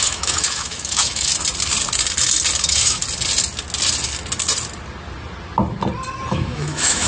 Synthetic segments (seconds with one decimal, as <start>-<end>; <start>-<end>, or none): 0.0-1.3; 2.6-3.0; 6.3-7.1